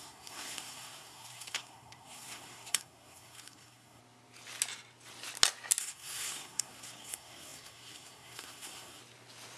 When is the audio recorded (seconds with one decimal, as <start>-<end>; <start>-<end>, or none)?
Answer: 4.0-5.8; 9.0-9.6